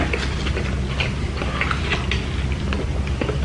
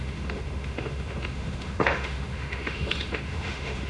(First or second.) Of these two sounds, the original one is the first